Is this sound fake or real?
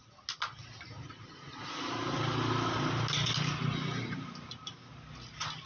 real